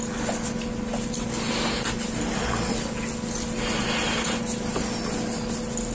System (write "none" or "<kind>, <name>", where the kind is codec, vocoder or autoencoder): none